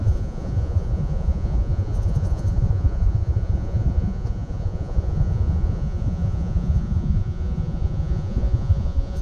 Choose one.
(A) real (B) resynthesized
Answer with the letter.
B